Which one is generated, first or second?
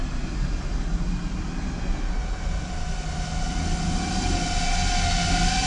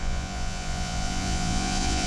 second